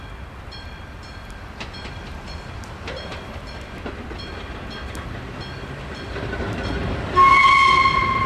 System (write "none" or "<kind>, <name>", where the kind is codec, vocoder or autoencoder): none